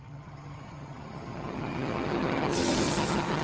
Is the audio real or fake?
fake